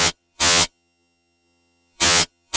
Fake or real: fake